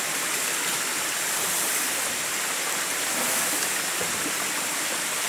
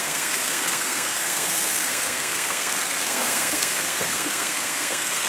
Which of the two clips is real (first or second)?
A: first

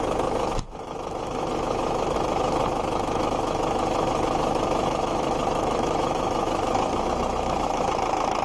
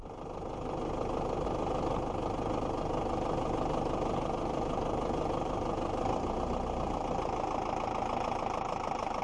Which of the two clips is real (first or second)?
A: second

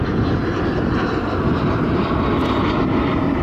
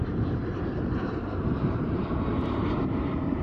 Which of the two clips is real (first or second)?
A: first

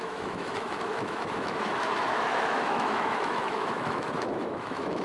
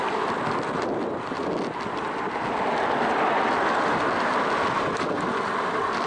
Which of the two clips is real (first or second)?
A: second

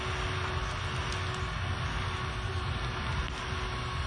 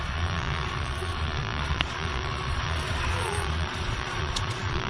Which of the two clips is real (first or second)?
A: first